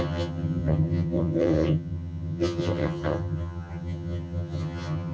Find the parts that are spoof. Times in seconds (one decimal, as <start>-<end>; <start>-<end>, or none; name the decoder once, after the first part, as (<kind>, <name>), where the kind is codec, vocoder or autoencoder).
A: 0.0-5.1 (vocoder, HiFi-GAN)